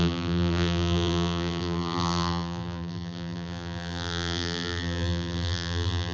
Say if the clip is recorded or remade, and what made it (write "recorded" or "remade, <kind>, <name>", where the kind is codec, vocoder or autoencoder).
remade, vocoder, BigVGAN v2